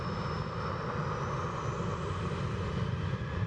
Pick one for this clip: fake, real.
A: real